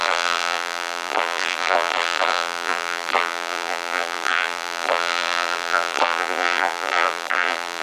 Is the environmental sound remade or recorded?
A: remade